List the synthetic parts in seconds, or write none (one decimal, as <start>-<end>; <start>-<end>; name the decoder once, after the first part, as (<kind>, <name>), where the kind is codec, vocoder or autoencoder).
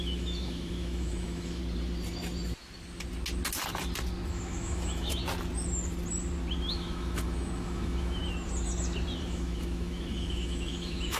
0.0-1.6 (autoencoder, DAC-VAE); 4.3-5.2; 6.7-8.2; 9.2-11.2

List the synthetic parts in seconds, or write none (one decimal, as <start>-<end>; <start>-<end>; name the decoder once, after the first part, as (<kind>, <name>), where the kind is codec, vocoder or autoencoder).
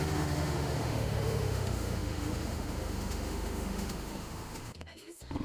0.0-5.4 (autoencoder, DAC-VAE)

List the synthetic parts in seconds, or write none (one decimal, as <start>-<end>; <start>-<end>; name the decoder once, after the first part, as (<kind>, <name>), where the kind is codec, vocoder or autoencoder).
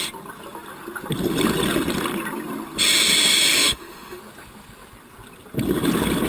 3.6-4.2 (autoencoder, DAC-VAE)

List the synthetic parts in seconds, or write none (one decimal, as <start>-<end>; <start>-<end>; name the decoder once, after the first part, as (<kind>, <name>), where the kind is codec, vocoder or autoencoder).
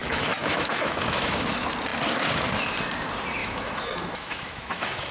0.0-1.5 (autoencoder, DAC-VAE); 3.4-5.1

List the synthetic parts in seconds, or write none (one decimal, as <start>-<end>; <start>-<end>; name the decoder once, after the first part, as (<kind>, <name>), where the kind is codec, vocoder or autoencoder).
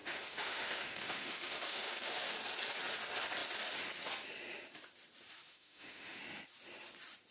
0.0-2.3 (autoencoder, DAC-VAE); 5.5-6.2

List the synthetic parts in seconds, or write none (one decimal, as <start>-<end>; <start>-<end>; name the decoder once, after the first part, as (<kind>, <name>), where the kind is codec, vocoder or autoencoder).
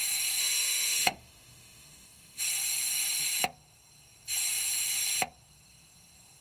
0.4-2.4 (autoencoder, DAC-VAE)